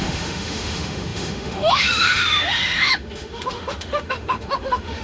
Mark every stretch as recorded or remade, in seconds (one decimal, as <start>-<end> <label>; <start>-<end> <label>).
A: 0.0-5.0 remade